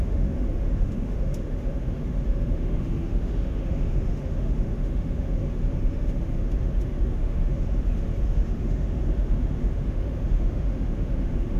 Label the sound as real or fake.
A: fake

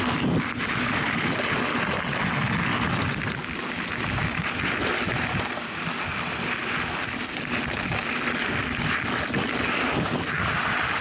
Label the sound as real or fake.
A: real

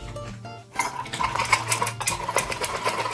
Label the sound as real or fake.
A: real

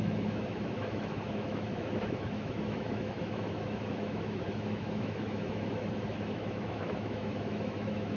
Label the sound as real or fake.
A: fake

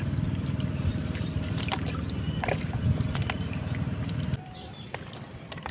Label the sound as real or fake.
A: real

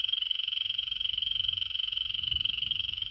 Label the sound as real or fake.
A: fake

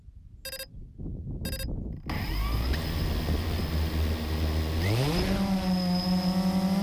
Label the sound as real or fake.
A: real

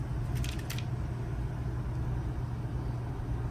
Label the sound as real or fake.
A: real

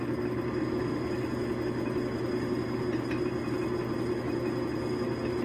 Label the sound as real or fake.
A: real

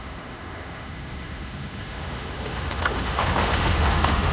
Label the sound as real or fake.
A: fake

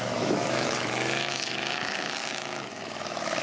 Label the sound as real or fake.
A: fake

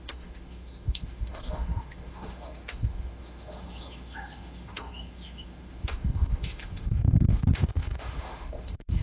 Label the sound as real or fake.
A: fake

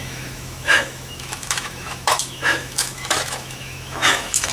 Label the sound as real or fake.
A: fake